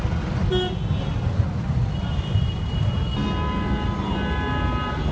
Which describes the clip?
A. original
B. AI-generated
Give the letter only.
A